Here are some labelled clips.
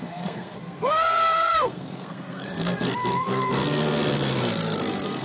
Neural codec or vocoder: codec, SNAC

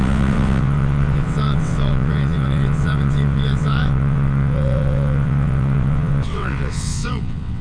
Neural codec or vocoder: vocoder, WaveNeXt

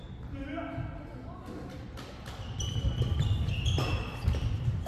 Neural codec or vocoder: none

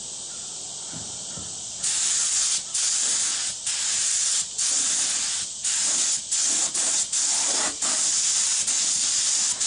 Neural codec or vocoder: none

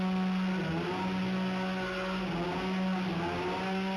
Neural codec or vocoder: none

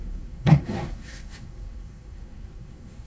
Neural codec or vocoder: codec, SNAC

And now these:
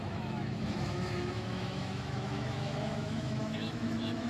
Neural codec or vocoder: autoencoder, DAC-VAE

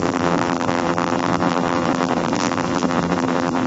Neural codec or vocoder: vocoder, BigVGAN v2